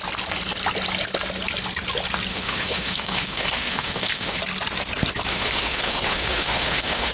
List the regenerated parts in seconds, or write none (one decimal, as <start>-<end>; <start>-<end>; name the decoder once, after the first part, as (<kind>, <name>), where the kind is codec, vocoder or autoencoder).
2.3-4.4 (autoencoder, DAC-VAE); 5.3-7.1